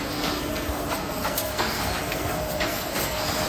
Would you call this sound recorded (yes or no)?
no